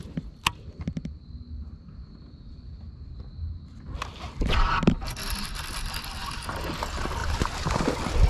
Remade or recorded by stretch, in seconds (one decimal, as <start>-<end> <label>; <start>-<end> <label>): 0.0-8.3 recorded